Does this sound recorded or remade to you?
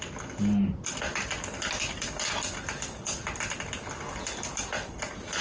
recorded